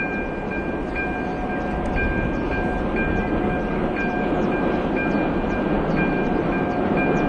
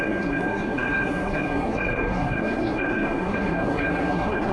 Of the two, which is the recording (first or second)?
first